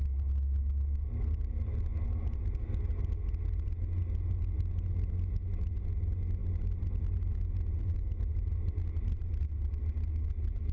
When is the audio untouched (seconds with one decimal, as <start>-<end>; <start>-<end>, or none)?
0.0-10.7